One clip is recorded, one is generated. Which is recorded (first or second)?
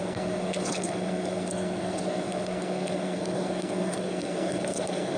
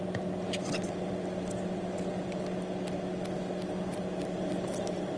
second